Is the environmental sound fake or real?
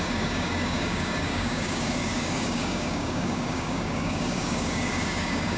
fake